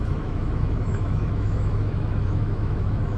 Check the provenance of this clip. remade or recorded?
remade